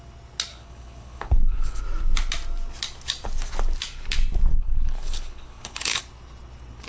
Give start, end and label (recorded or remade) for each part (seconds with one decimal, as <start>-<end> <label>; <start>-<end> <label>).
0.0-0.5 recorded; 0.5-1.8 remade; 1.8-4.5 recorded; 4.5-6.0 remade; 6.0-6.9 recorded